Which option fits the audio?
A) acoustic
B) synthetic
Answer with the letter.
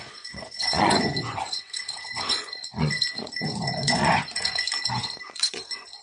B